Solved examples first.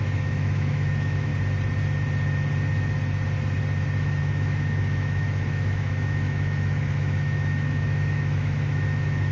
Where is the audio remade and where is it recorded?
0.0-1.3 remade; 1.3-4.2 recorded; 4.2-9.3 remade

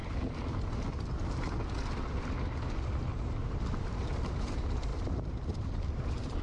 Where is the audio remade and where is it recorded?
0.0-3.8 recorded; 3.8-6.4 remade